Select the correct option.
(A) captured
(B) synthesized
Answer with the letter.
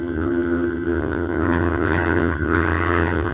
B